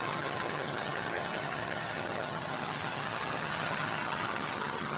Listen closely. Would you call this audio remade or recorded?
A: remade